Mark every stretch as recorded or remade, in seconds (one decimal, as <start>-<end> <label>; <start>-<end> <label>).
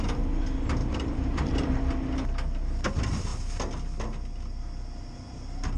0.0-0.8 recorded; 0.8-1.8 remade; 1.8-5.8 recorded